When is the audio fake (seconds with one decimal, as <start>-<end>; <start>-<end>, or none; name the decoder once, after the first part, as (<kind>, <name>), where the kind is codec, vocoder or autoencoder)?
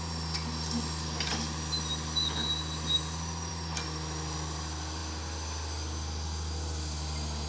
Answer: none